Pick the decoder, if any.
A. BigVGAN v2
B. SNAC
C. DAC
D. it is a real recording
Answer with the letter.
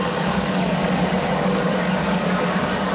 C